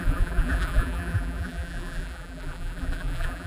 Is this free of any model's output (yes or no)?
no